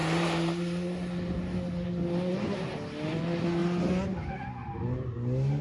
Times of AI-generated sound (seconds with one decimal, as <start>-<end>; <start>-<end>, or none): none